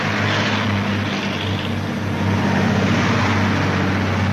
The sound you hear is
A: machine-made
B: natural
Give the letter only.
B